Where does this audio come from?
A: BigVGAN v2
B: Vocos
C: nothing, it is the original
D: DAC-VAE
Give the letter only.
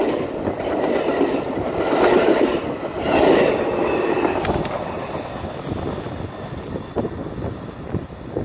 C